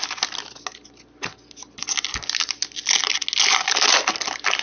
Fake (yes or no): no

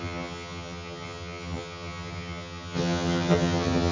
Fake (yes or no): yes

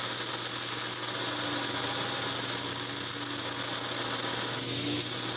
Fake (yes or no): no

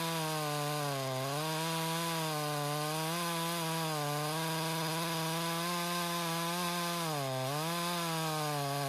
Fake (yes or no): no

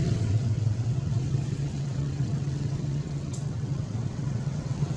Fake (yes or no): yes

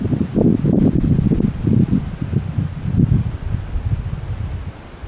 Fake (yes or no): no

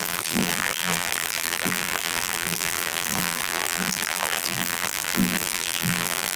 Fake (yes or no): yes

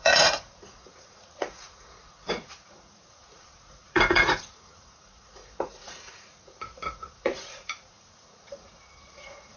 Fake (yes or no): yes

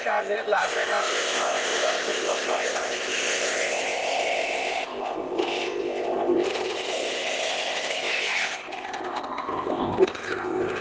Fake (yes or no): yes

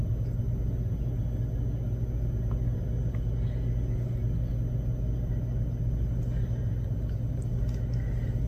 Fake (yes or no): no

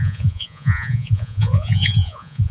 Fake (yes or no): yes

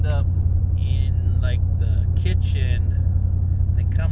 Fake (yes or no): no